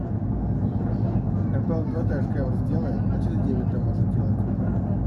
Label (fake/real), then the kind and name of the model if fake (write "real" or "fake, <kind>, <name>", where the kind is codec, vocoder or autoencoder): real